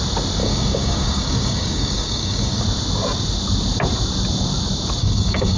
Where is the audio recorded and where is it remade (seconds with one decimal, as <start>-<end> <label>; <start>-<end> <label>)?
0.0-0.4 recorded; 0.4-2.6 remade; 2.6-5.0 recorded; 5.0-5.6 remade